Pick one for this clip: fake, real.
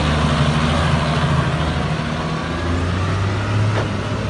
real